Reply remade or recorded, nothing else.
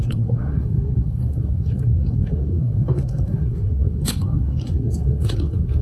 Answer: remade